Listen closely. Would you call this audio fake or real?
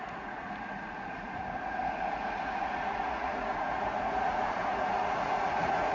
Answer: fake